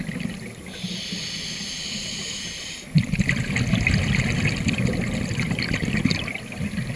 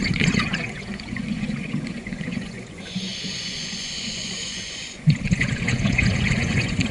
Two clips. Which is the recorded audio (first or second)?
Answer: first